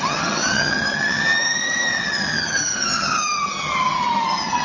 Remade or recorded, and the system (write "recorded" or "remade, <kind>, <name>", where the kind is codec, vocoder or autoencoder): remade, vocoder, HiFi-GAN